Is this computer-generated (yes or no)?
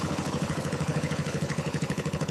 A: yes